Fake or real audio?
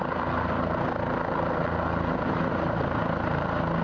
real